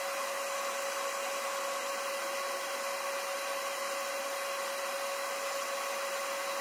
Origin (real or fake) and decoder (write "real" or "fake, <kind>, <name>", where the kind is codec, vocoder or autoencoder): real